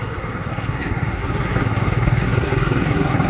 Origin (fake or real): fake